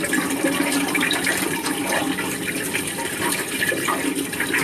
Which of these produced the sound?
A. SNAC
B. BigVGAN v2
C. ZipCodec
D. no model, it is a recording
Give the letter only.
B